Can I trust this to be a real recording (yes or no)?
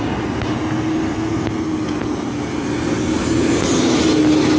yes